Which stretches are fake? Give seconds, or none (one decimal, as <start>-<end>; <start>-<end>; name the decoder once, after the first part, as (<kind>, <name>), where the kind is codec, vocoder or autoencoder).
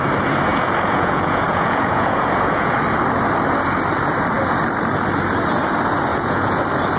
0.5-2.7 (vocoder, Vocos); 6.1-6.6